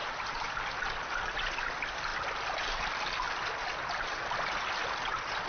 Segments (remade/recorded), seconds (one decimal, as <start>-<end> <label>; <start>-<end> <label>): 0.0-0.7 remade; 0.7-5.5 recorded